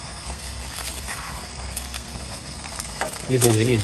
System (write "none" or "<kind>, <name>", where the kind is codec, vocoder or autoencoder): codec, SNAC